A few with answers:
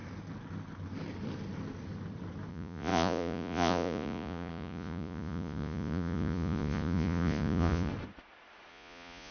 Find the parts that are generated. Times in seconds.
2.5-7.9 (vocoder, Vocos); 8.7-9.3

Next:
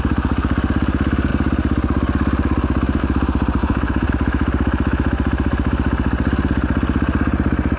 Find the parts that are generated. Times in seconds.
3.6-4.1 (vocoder, Vocos)

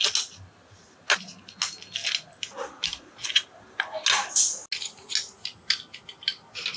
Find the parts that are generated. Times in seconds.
none

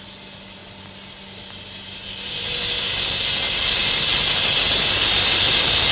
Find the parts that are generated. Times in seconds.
none